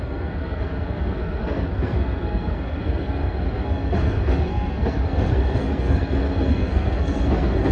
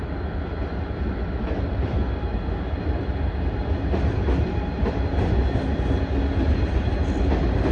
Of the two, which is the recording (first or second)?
second